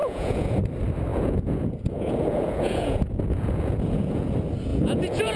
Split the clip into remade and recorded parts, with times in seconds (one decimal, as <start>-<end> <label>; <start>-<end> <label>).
0.0-0.6 remade; 0.6-1.1 recorded; 1.1-4.3 remade; 4.3-4.7 recorded; 4.7-5.4 remade